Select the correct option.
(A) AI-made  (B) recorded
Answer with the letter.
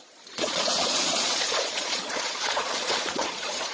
A